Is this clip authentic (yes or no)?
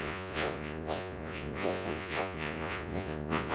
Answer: no